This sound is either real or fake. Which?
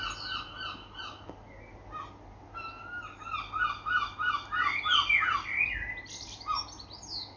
real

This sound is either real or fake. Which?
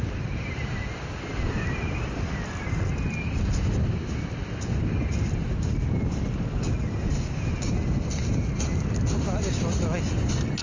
real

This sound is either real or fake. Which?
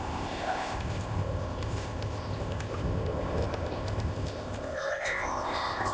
fake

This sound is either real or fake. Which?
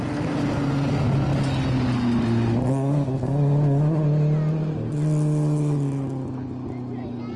real